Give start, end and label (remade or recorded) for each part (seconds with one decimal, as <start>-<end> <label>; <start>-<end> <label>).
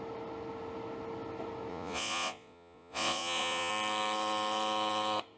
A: 0.0-1.7 recorded; 1.7-3.7 remade; 3.7-5.4 recorded